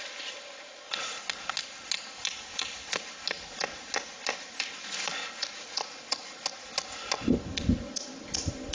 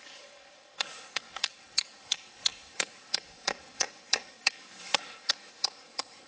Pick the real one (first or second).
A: first